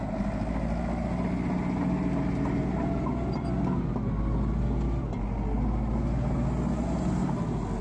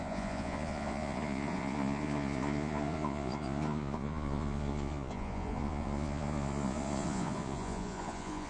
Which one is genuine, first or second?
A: first